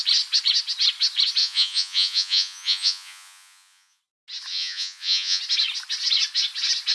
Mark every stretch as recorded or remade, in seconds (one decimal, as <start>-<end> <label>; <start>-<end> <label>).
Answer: 0.0-1.4 recorded; 1.4-4.0 remade; 4.0-4.5 recorded; 4.5-5.4 remade; 5.4-6.9 recorded